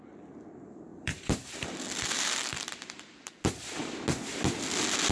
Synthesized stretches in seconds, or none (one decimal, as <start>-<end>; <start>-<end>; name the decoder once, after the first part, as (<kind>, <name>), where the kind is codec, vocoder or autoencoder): 0.9-4.0 (vocoder, BigVGAN v2)